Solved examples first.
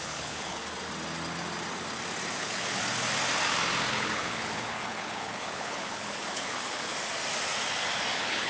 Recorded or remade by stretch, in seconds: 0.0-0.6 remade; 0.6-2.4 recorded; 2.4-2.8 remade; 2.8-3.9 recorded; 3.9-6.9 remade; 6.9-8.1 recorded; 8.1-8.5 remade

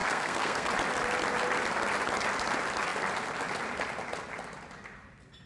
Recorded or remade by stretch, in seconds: 0.0-0.7 remade; 0.7-5.5 recorded

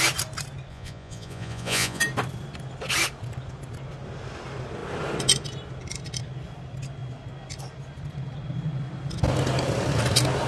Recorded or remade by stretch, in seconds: 0.0-0.7 recorded; 0.7-2.0 remade; 2.0-10.5 recorded

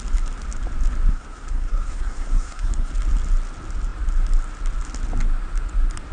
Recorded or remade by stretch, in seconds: 0.0-1.1 recorded; 1.1-2.9 remade; 2.9-6.1 recorded

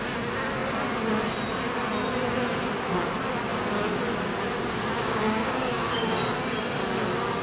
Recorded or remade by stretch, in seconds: 0.0-5.0 recorded; 5.0-6.1 remade; 6.1-7.4 recorded

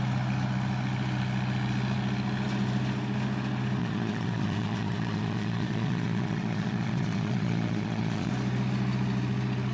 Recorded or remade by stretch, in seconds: 0.0-3.8 recorded; 3.8-8.3 remade; 8.3-9.7 recorded